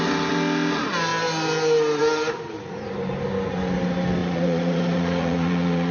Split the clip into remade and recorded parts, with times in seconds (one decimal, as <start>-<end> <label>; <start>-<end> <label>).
0.0-4.2 recorded; 4.2-5.9 remade